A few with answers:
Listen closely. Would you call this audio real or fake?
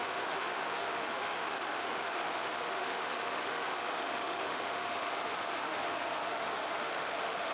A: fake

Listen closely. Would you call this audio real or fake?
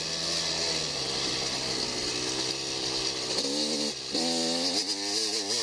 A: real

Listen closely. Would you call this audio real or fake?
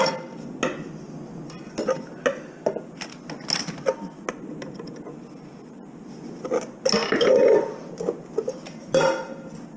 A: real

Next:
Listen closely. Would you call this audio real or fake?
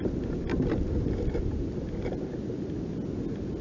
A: real